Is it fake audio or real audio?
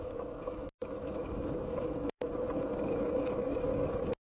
fake